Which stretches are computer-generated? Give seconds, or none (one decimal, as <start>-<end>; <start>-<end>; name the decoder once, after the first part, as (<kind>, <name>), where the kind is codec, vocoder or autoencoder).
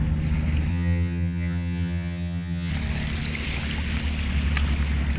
0.7-2.7 (vocoder, HiFi-GAN)